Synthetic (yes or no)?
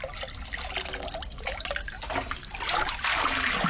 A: no